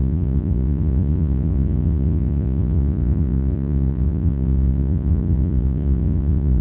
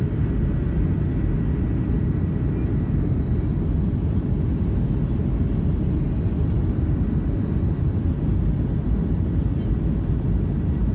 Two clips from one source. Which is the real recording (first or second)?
second